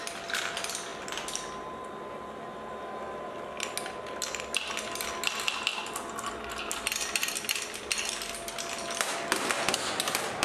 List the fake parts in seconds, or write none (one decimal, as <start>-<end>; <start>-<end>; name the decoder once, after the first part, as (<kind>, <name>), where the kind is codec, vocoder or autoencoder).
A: none

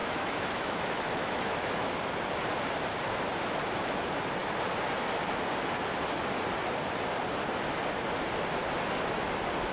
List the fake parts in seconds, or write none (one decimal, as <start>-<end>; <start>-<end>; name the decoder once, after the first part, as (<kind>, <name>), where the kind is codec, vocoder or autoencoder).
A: 0.0-1.9 (autoencoder, DAC-VAE)

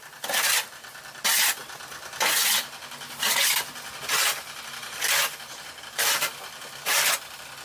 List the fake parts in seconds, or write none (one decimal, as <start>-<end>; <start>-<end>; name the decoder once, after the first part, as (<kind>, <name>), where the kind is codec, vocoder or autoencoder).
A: none

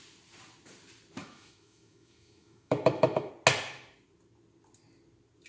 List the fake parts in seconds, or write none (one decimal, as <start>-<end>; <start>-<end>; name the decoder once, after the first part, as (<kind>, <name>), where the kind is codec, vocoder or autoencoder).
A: 1.2-3.3 (autoencoder, DAC-VAE)

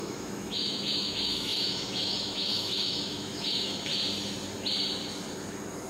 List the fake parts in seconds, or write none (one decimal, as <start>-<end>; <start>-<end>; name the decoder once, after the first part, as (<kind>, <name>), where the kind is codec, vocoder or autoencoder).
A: 0.0-3.9 (autoencoder, DAC-VAE)

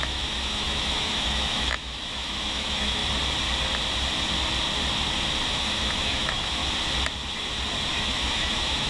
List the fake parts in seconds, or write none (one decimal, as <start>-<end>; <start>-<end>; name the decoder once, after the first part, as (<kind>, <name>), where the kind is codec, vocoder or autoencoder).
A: 0.0-3.0 (autoencoder, DAC-VAE); 5.5-6.6; 7.9-8.9